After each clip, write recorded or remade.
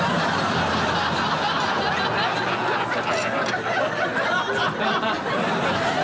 recorded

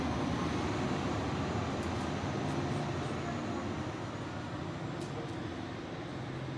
recorded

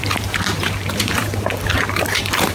remade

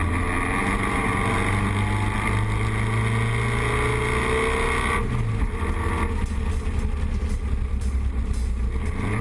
recorded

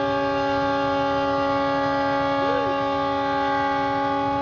recorded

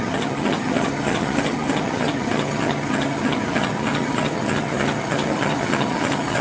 remade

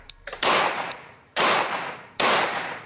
remade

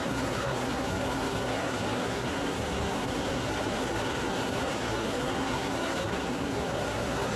remade